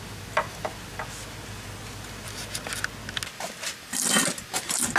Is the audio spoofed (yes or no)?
no